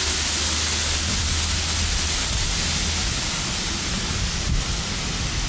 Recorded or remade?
recorded